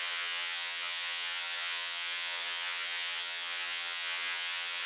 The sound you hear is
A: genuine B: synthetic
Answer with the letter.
B